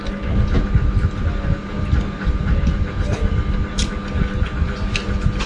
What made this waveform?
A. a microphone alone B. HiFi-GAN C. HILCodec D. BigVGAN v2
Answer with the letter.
A